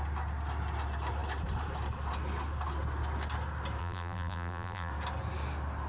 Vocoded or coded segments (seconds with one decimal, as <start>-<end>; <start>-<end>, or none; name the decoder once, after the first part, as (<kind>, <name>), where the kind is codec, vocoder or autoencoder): 3.8-4.9 (vocoder, BigVGAN v2)